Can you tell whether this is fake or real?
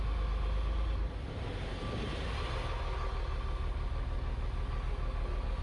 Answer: real